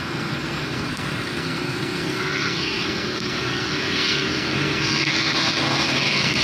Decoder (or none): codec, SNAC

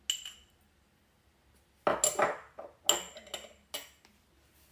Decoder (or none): none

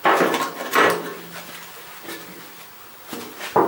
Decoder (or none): none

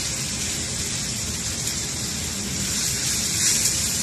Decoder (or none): none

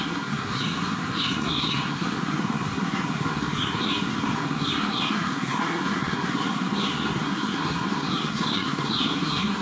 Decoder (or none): codec, SNAC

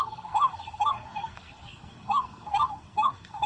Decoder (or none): codec, SNAC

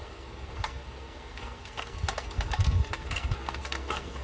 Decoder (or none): codec, SNAC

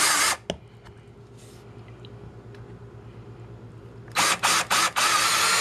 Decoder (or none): none